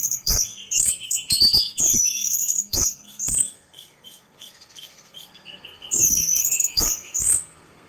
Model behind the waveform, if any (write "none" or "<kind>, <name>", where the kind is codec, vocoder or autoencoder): codec, SNAC